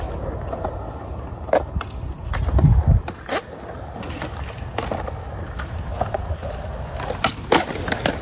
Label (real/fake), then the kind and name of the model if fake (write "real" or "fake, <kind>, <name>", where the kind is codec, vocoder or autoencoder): real